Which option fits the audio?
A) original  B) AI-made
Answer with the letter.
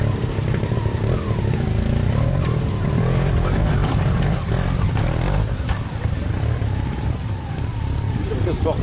B